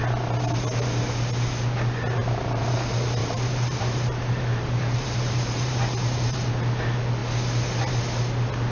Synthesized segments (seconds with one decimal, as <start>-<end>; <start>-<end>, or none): 2.2-2.7; 3.2-6.8

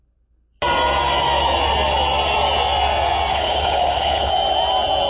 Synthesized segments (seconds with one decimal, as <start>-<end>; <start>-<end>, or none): 3.3-4.3

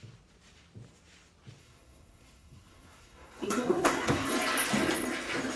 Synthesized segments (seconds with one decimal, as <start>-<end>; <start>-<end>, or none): 1.6-4.3

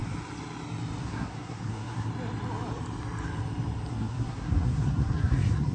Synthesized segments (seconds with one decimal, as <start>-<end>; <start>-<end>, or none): 1.0-2.1; 3.9-5.7

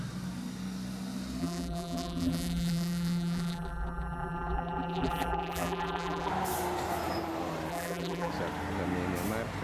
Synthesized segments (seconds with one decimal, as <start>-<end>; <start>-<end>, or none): 1.4-6.3; 7.7-8.3